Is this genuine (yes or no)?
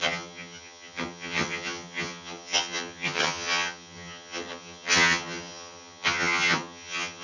no